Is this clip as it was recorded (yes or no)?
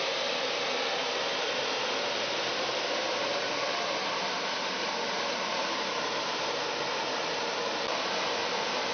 no